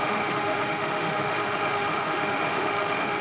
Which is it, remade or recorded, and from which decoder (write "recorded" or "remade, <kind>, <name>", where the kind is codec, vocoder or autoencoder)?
remade, autoencoder, DAC-VAE